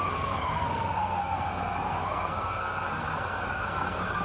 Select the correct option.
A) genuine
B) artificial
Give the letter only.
B